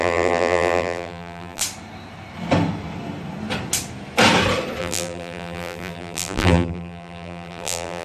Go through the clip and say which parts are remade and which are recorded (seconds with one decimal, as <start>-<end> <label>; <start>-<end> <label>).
0.0-1.6 remade; 1.6-4.8 recorded; 4.8-8.0 remade